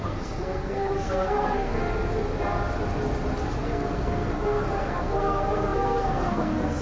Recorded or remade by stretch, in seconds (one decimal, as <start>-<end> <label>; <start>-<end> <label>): 0.0-1.8 remade; 1.8-3.6 recorded; 3.6-6.8 remade